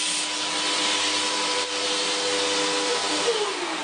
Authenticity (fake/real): real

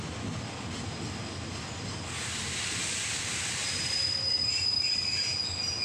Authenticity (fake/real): real